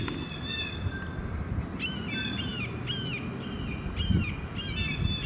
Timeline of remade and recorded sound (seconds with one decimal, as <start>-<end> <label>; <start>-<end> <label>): 0.0-5.3 recorded